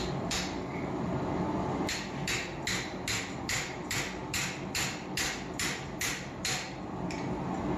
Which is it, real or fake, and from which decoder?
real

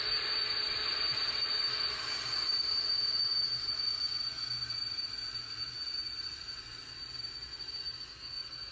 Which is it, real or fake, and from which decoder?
real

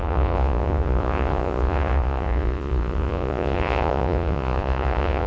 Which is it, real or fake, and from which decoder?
fake, vocoder, Vocos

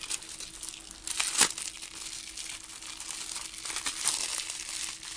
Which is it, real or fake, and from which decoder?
real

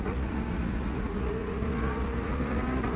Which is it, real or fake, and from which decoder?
fake, vocoder, Vocos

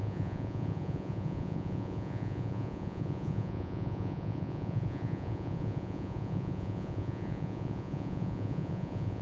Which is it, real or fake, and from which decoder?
fake, vocoder, Vocos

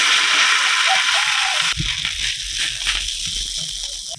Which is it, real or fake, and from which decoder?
real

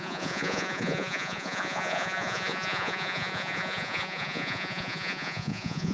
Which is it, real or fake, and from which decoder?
fake, vocoder, Vocos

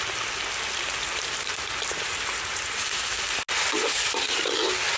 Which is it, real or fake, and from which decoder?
real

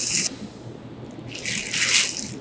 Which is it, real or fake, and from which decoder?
real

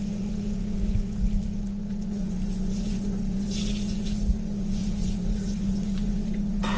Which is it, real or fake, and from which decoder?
fake, vocoder, Vocos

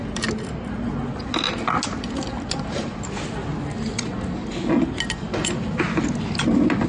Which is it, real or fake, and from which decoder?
real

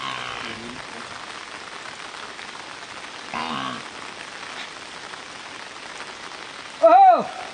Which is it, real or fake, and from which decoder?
real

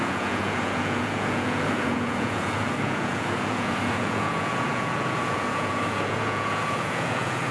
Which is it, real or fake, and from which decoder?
fake, vocoder, Vocos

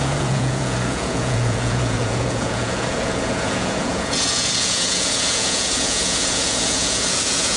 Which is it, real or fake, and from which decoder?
fake, vocoder, Vocos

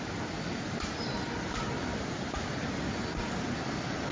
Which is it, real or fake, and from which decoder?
real